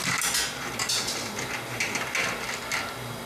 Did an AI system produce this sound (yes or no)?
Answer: no